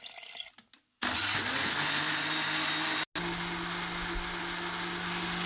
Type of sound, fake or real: real